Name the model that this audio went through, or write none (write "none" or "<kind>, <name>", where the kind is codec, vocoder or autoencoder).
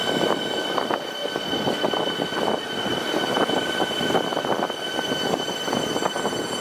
none